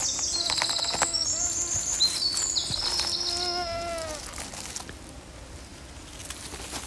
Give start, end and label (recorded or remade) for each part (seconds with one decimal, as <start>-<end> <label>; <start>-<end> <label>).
0.0-6.9 recorded